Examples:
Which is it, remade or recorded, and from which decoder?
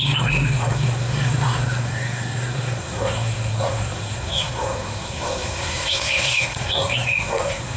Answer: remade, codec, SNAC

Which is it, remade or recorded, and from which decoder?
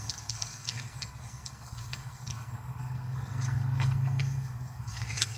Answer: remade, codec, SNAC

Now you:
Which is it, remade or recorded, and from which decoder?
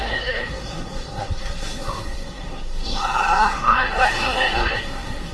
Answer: remade, codec, SNAC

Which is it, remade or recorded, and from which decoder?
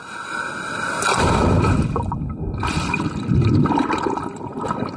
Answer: recorded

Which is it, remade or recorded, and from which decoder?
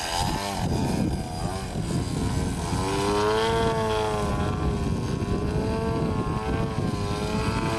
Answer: recorded